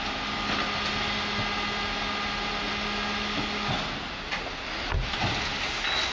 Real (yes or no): yes